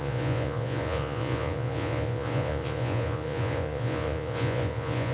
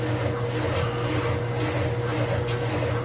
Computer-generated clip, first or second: first